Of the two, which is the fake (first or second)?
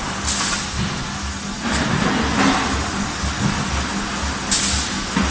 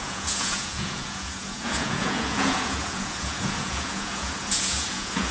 second